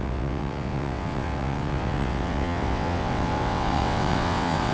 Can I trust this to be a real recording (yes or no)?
no